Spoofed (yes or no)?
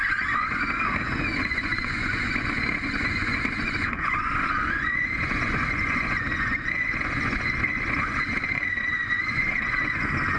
yes